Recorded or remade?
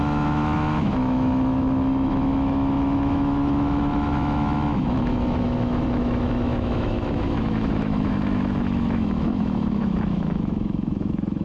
remade